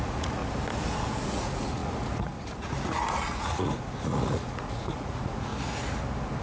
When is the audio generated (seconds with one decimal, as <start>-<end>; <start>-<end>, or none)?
0.0-0.4; 1.2-5.5